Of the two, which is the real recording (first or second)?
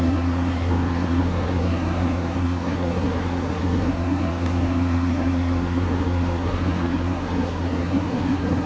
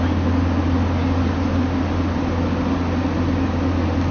second